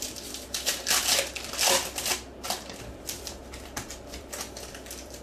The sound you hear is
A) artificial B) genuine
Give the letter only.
A